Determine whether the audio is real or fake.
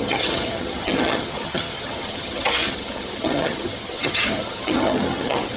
fake